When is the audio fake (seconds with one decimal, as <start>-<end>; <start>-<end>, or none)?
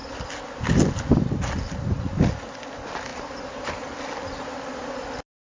none